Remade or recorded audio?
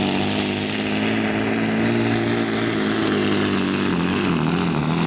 recorded